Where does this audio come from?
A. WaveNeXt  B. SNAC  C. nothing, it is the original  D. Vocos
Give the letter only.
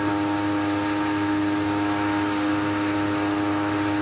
C